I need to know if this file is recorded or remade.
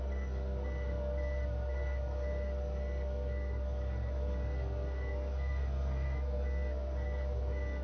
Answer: remade